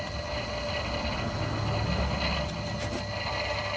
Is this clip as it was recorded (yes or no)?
yes